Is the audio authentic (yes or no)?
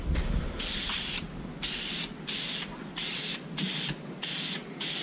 yes